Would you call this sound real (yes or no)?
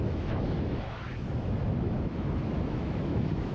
no